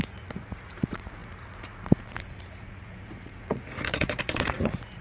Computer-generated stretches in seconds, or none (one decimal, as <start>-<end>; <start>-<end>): 0.0-5.0